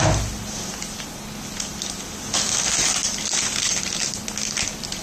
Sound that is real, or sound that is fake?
real